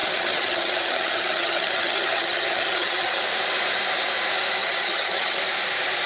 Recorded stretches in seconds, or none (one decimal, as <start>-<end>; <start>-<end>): 3.2-4.6; 5.4-6.1